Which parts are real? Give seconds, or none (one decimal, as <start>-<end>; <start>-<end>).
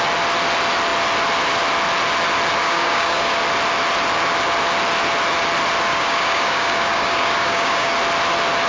0.0-2.6; 3.4-5.9; 7.9-8.7